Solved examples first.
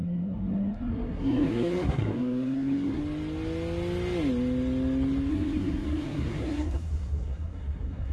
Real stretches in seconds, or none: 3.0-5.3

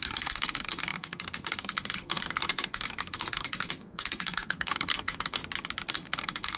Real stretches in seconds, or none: 5.4-5.9

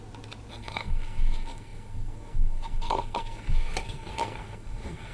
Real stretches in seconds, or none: 0.0-0.5

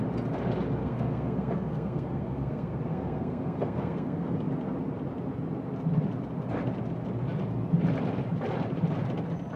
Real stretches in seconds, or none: 0.0-0.8; 4.5-9.6

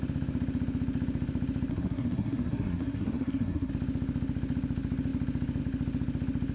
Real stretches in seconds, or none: 0.0-1.7; 3.7-6.5

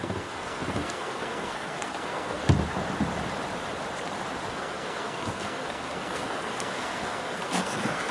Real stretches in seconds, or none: 2.4-4.5

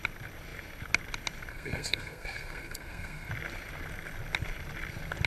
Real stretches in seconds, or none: 0.0-1.5; 3.3-5.3

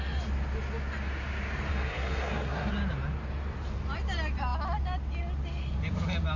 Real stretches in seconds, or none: 0.0-1.7; 2.7-6.4